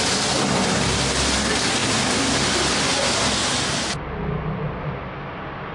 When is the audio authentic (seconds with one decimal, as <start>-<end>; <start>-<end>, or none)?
0.0-5.7